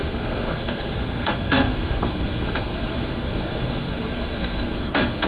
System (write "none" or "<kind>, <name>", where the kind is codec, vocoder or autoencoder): codec, SNAC